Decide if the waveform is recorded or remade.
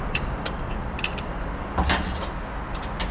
recorded